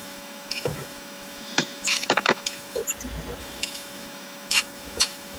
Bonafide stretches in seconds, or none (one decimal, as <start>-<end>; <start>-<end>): 2.8-3.4